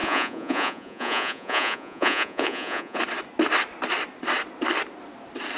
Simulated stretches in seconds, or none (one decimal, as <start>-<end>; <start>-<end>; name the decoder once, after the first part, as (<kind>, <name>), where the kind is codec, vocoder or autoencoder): 0.0-3.0 (vocoder, Vocos)